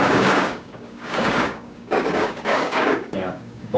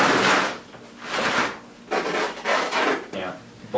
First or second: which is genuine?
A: second